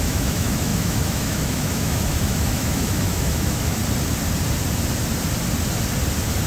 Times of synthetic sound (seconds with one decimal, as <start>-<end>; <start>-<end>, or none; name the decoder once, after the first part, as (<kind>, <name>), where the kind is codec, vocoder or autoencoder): 0.0-3.8 (autoencoder, DAC-VAE)